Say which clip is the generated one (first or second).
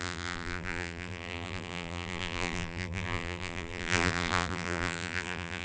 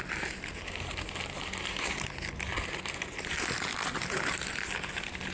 first